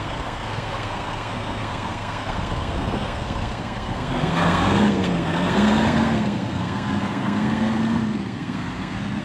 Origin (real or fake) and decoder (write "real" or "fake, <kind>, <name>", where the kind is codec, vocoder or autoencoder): fake, codec, SNAC